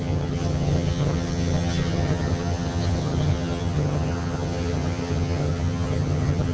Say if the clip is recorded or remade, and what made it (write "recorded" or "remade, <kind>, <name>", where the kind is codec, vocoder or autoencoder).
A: remade, vocoder, HiFi-GAN